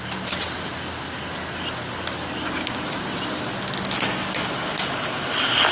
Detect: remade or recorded recorded